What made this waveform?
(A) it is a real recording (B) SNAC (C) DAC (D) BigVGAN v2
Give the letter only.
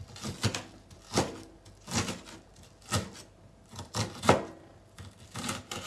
A